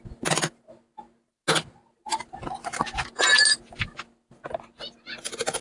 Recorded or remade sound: recorded